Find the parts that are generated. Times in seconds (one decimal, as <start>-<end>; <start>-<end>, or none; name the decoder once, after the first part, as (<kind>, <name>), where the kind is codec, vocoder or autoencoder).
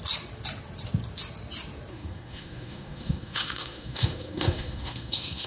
1.9-5.5 (codec, SNAC)